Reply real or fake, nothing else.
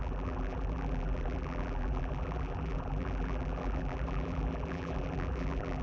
fake